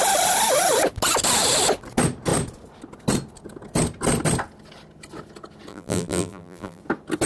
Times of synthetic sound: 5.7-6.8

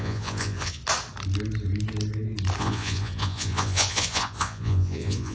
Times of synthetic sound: 0.0-0.8; 2.6-5.3